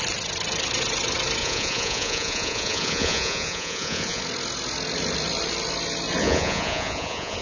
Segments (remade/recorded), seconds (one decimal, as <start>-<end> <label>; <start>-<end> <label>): 0.0-1.4 recorded; 1.4-4.2 remade; 4.2-6.2 recorded; 6.2-7.4 remade

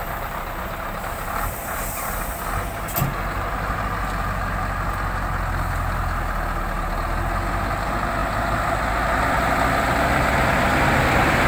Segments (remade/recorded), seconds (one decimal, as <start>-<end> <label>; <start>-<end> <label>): 0.0-11.5 recorded